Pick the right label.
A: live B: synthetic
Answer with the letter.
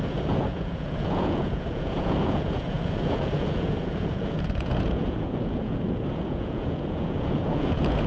B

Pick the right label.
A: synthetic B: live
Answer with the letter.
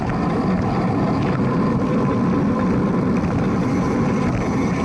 B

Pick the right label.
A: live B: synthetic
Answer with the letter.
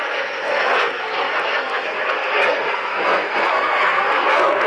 B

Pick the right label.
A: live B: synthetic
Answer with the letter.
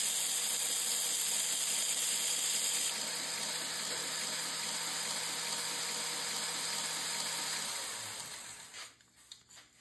A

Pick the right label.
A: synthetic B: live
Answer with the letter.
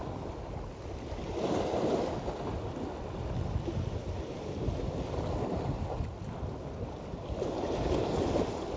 B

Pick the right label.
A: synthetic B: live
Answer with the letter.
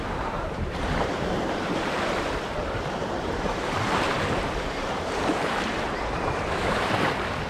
A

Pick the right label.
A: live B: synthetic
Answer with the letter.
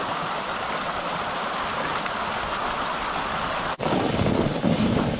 A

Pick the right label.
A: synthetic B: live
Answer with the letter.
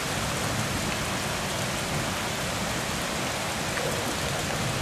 B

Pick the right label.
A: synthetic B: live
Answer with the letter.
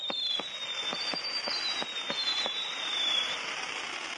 B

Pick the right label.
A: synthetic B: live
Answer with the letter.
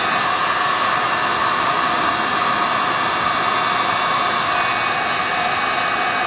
B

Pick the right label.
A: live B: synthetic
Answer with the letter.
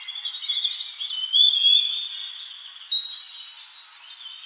A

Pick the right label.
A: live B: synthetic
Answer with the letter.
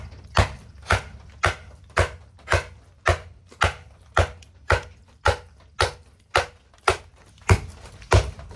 A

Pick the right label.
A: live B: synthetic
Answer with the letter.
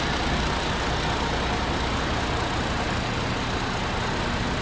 A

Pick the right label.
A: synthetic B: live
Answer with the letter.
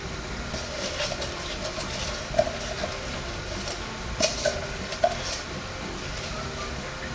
B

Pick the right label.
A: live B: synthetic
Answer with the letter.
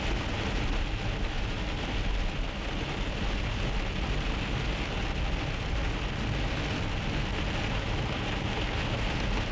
A